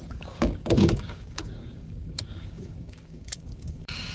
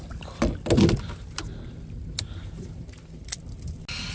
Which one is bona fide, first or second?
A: second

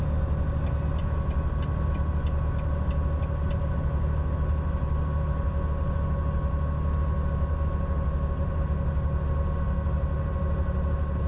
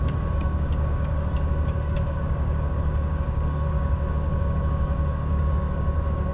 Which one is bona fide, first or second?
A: first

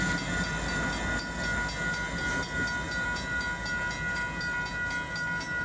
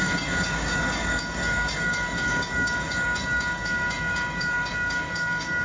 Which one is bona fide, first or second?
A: first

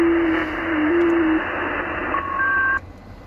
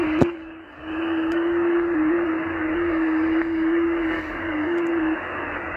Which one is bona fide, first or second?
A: first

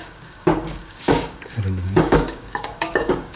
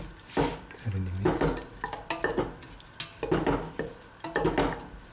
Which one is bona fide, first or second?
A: second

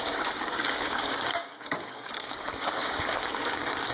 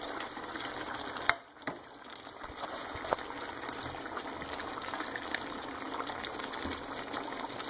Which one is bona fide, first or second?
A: second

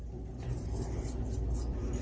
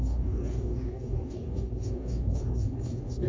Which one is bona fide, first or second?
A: first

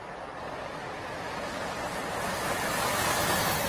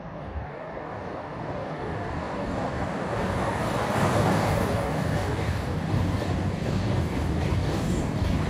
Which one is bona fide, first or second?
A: first